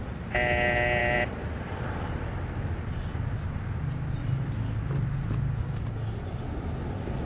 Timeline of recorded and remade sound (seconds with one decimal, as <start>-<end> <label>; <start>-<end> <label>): 0.0-7.2 recorded